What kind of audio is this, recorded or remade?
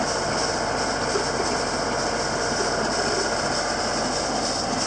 recorded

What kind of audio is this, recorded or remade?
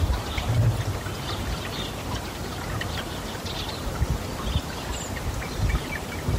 recorded